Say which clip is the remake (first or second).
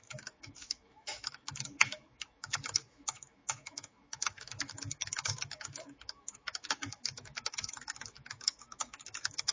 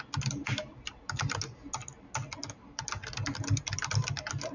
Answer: first